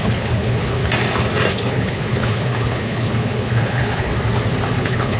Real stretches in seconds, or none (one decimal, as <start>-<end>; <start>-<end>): 0.8-1.5; 4.1-4.8